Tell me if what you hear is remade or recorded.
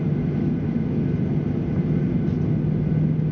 recorded